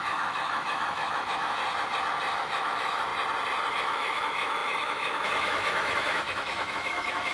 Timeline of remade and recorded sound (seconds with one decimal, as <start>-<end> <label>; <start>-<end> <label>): 0.0-1.6 remade; 1.6-2.4 recorded; 2.4-3.1 remade; 3.1-3.7 recorded; 3.7-7.3 remade